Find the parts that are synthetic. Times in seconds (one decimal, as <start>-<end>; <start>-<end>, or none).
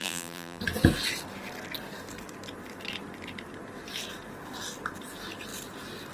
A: 0.0-0.6